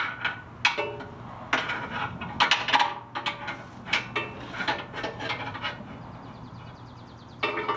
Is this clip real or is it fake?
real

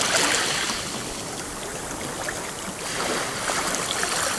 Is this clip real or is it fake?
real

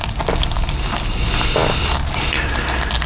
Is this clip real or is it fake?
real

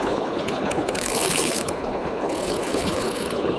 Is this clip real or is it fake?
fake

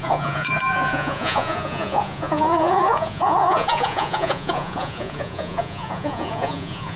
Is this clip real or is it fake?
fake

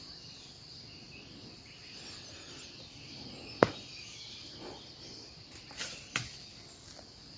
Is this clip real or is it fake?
fake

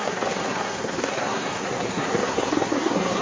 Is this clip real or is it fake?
fake